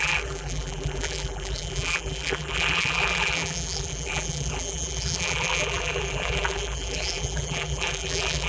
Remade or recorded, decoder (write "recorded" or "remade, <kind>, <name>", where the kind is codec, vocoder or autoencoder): remade, vocoder, BigVGAN v2